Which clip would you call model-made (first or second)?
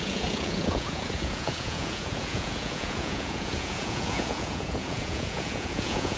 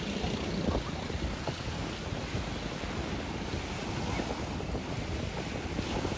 first